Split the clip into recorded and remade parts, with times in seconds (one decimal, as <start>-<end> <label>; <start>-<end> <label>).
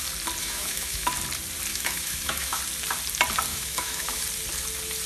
0.0-0.4 recorded; 0.4-1.1 remade; 1.1-1.7 recorded; 1.7-2.6 remade; 2.6-3.5 recorded; 3.5-4.2 remade; 4.2-5.1 recorded